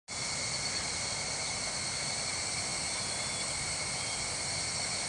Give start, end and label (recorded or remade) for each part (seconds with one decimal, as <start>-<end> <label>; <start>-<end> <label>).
0.0-5.1 recorded